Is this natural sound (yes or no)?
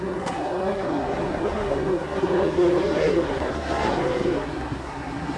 no